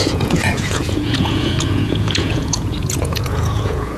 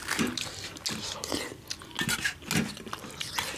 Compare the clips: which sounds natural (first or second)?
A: second